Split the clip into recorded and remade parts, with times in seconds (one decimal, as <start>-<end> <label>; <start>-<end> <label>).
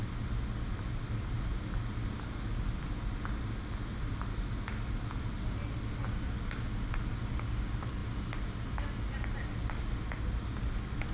0.0-11.1 recorded